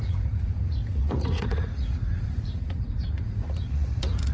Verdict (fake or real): fake